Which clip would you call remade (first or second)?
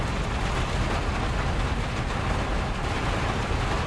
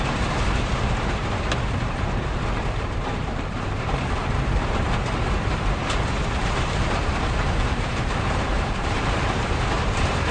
second